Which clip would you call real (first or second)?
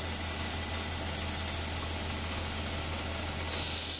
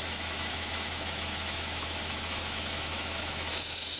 first